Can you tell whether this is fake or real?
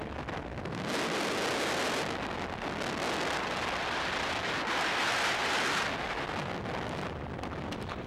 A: real